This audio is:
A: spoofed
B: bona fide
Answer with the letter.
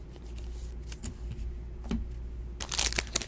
B